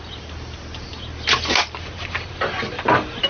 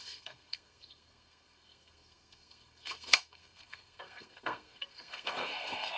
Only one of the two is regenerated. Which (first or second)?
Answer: second